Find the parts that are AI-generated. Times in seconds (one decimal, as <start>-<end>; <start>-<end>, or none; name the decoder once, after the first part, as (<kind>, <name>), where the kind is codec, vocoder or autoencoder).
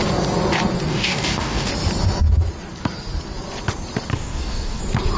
0.9-1.7 (codec, DAC); 4.1-4.8